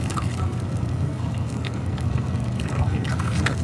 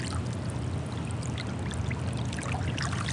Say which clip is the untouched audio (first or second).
second